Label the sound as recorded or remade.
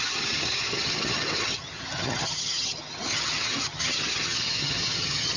remade